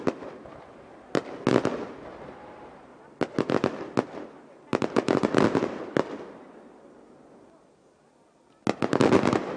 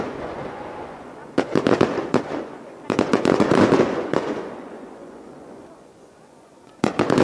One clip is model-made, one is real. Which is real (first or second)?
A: first